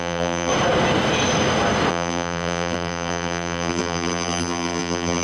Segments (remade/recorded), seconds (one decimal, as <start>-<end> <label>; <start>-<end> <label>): 0.0-0.5 remade; 0.5-1.9 recorded; 1.9-5.2 remade